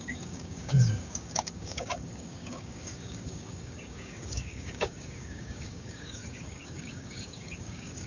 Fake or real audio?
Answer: fake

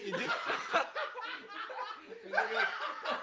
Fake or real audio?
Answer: real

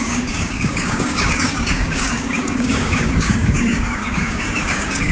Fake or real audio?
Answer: fake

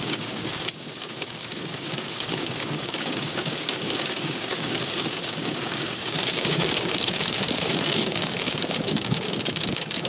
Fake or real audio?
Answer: fake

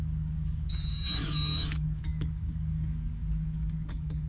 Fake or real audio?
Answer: fake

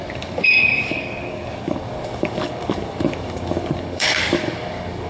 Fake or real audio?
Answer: fake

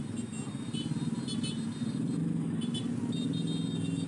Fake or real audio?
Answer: real